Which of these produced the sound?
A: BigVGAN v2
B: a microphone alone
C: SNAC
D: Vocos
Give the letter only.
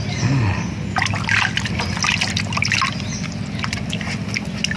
B